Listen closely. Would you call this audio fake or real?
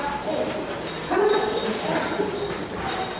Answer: real